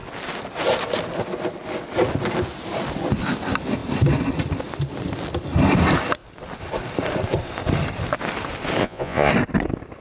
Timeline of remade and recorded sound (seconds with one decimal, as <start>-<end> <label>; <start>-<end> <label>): 0.0-8.8 recorded; 8.8-9.3 remade; 9.3-10.0 recorded